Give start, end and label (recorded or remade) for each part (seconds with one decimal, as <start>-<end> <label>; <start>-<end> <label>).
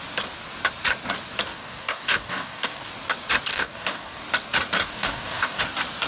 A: 0.0-1.5 recorded; 1.5-2.9 remade; 2.9-3.5 recorded; 3.5-4.2 remade; 4.2-4.8 recorded; 4.8-5.6 remade; 5.6-6.1 recorded